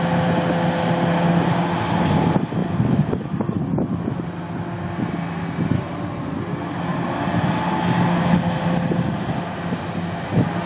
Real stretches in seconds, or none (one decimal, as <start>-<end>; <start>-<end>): 0.0-10.7

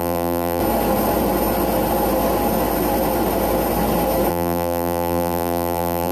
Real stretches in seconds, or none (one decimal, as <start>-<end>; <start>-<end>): 0.6-4.3

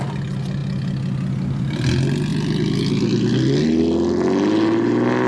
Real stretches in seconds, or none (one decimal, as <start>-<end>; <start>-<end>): 0.0-5.3

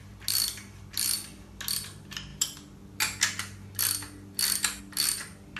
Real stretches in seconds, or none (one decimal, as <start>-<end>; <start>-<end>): 0.0-5.6